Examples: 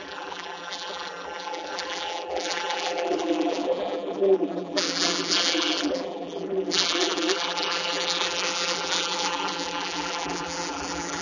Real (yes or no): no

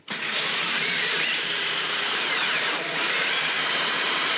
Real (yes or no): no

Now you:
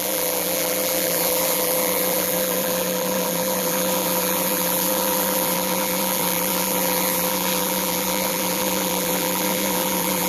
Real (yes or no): no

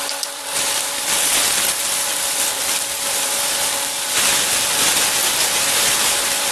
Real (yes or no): no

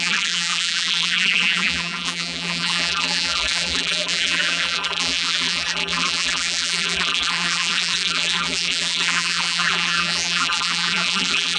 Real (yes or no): no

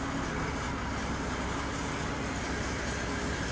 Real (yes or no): yes